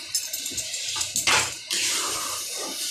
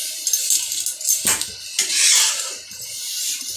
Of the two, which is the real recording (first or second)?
second